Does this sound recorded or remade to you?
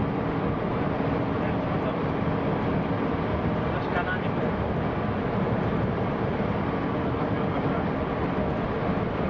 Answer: remade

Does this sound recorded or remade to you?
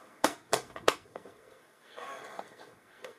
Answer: remade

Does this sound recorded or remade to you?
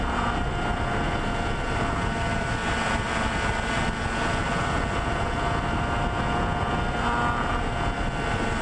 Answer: recorded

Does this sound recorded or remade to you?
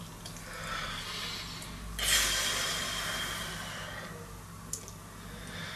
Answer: recorded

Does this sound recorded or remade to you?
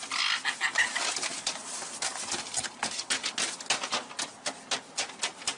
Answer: recorded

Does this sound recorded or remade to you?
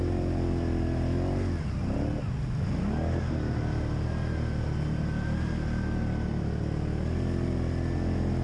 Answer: recorded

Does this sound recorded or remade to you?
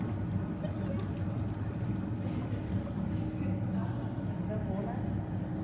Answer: recorded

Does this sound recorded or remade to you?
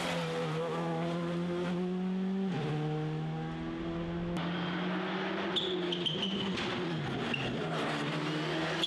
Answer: recorded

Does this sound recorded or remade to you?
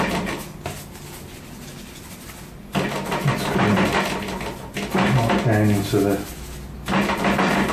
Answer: recorded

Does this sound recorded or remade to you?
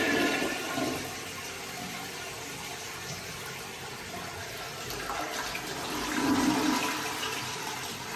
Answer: recorded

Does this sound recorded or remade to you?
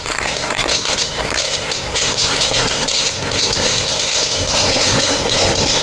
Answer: remade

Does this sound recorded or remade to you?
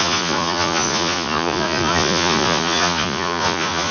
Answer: remade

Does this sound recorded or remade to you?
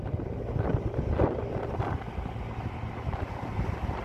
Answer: recorded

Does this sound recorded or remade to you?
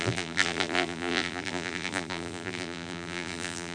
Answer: remade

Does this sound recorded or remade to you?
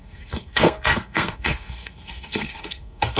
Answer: remade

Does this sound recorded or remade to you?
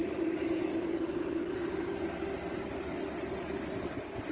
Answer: recorded